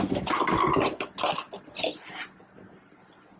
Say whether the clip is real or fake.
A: real